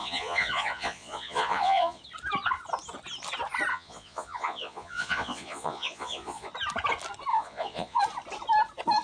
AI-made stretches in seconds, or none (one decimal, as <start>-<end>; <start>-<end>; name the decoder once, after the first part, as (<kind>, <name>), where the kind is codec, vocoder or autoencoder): 0.0-2.0 (vocoder, Vocos); 3.7-6.5; 7.3-8.0